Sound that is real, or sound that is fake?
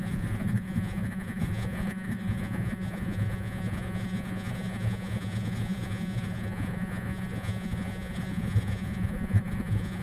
fake